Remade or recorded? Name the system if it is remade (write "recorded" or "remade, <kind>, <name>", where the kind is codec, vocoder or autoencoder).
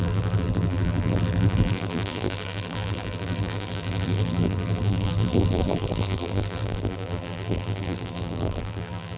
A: remade, vocoder, BigVGAN v2